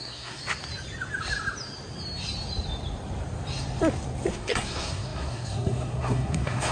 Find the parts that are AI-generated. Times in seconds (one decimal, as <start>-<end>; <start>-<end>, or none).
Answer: 0.0-0.4; 4.3-6.7